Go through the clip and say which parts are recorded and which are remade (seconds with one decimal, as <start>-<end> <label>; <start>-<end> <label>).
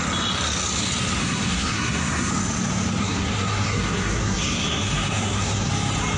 0.0-1.2 recorded; 1.2-2.3 remade; 2.3-3.0 recorded; 3.0-5.7 remade; 5.7-6.2 recorded